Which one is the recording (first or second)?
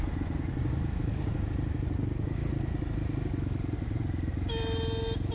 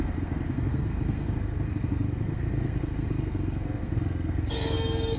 first